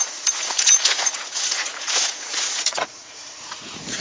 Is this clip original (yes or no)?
no